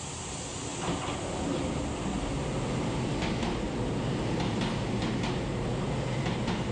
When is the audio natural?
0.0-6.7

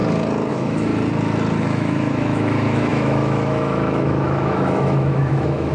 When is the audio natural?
0.0-0.5; 0.9-1.6

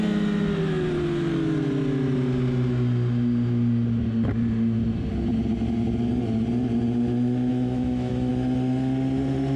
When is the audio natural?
0.0-7.5; 8.3-9.6

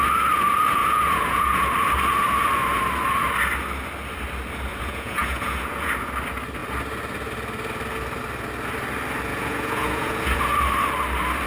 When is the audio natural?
0.0-0.8; 1.6-4.7; 6.1-9.3; 10.4-11.5

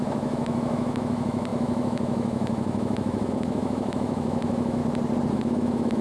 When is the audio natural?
4.8-5.3